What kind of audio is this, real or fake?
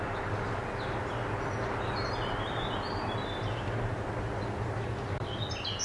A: real